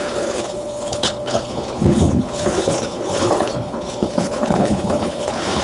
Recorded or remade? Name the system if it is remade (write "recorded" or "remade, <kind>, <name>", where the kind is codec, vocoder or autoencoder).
remade, codec, HILCodec